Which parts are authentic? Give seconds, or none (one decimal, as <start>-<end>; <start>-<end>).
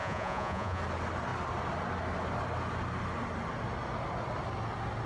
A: 0.8-5.1